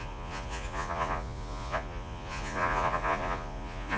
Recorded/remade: remade